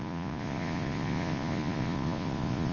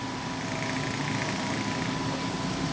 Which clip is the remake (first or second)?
first